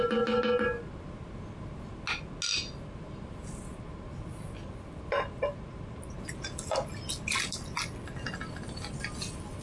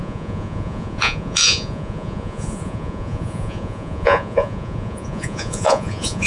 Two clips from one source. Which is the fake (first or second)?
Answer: second